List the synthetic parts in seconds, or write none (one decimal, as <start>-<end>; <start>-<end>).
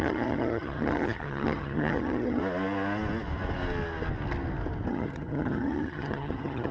0.0-2.4; 4.9-6.7